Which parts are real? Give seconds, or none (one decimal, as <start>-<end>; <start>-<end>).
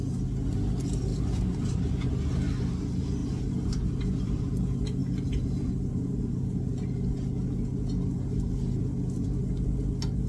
0.0-1.1; 2.0-3.2; 4.4-5.0; 6.7-10.3